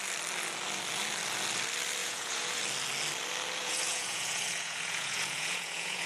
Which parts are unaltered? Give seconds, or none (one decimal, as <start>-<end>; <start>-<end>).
0.0-2.0; 2.6-3.6